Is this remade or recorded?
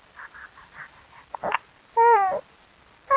recorded